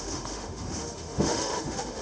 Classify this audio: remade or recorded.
remade